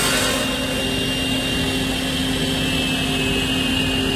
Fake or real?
real